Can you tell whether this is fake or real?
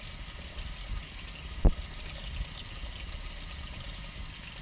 real